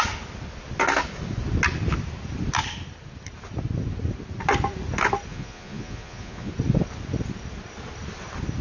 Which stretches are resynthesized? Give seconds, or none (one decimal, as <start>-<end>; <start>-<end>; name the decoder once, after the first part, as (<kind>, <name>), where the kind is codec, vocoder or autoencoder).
5.3-6.5 (vocoder, Vocos)